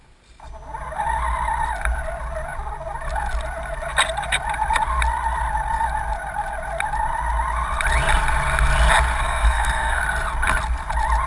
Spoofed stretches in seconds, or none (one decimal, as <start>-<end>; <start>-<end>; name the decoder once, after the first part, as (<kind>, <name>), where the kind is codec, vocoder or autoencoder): 9.2-10.0 (codec, SNAC)